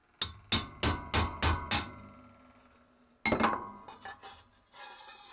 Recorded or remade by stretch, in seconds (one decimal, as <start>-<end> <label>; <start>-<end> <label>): 0.0-5.3 recorded